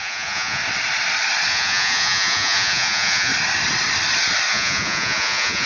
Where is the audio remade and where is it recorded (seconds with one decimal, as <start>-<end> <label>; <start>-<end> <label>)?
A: 0.0-0.6 remade; 0.6-1.5 recorded; 1.5-3.3 remade; 3.3-4.5 recorded; 4.5-5.7 remade